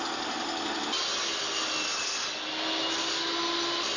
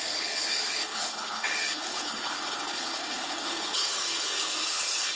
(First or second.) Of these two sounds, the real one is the first